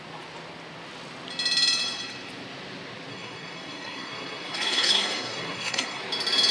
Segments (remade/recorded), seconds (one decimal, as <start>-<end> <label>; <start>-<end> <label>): 0.0-3.1 recorded; 3.1-6.0 remade; 6.0-6.5 recorded